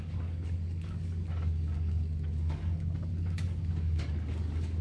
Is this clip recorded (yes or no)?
no